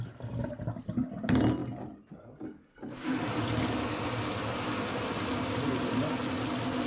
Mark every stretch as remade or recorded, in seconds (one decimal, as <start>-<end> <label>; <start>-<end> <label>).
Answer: 0.0-6.9 recorded